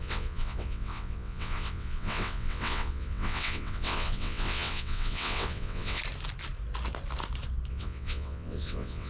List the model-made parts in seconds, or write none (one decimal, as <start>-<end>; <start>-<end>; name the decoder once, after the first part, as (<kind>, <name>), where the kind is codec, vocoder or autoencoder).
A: 0.0-6.0 (vocoder, WaveNeXt); 7.7-9.1